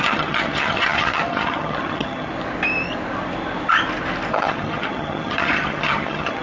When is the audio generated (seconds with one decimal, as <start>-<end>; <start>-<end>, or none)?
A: 0.0-2.3; 4.3-6.4

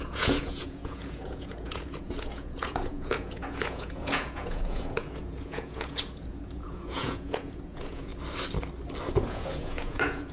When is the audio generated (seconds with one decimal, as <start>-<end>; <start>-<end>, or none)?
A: 0.0-8.1; 9.2-10.3